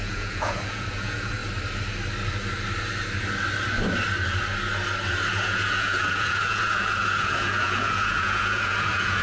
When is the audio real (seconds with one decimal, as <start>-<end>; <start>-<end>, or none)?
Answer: 1.4-5.3